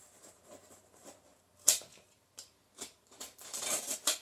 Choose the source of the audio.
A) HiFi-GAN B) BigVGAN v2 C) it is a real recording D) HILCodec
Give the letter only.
B